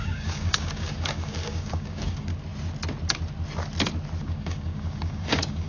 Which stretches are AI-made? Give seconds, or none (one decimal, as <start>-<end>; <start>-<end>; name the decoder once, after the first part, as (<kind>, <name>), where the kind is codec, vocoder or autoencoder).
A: 0.0-2.3 (codec, DAC); 4.2-5.7